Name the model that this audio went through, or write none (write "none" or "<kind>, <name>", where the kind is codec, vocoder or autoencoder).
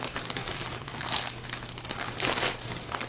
codec, DAC